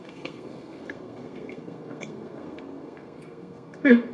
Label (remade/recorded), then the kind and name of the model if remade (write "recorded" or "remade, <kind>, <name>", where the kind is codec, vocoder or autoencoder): remade, codec, SNAC